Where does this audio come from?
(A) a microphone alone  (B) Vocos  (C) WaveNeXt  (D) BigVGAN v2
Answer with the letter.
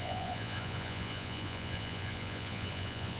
B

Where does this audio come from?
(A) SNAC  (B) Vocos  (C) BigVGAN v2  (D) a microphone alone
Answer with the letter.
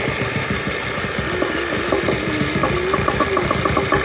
D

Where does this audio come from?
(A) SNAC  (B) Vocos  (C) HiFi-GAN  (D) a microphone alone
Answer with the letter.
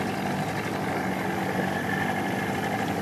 D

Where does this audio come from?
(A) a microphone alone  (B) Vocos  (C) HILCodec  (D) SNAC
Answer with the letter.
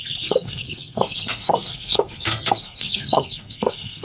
D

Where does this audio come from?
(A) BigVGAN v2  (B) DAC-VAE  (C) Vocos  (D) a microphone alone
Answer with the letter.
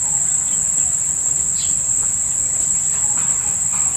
D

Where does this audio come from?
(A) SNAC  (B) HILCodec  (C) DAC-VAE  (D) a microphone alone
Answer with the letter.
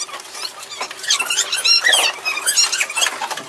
D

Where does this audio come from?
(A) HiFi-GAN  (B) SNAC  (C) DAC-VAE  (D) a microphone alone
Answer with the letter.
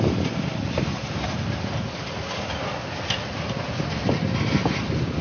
D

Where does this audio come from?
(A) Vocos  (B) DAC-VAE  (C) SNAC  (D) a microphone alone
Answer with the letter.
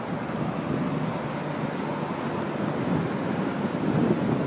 D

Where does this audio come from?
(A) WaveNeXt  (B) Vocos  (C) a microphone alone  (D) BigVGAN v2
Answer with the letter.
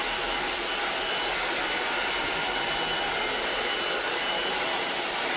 D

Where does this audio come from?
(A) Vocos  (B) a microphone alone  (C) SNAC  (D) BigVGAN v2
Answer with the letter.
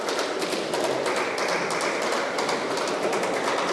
B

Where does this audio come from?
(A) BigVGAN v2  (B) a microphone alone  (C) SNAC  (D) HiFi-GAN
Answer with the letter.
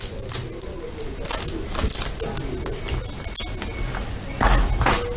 B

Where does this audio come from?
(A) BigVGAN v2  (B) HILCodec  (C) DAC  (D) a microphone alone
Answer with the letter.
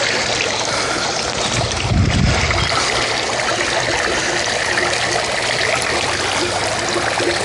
D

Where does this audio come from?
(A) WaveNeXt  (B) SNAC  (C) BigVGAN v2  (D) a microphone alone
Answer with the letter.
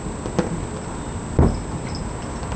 D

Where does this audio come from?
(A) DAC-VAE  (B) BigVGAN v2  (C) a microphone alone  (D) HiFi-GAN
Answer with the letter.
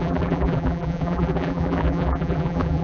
B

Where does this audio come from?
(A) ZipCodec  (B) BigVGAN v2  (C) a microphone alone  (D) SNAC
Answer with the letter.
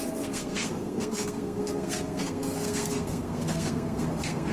D